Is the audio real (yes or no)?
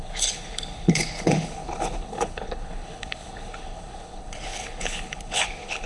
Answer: no